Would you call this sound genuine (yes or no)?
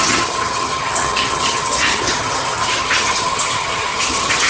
no